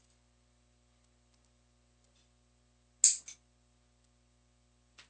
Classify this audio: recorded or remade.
recorded